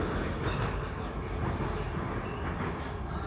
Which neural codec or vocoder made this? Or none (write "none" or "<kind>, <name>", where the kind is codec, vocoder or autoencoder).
none